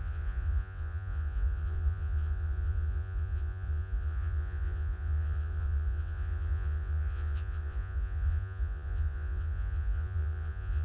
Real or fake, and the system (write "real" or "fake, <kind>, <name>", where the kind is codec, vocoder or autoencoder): fake, vocoder, Vocos